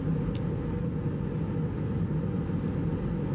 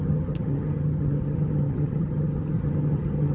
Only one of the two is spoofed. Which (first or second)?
second